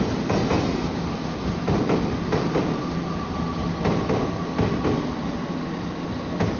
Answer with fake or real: real